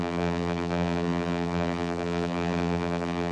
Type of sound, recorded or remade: remade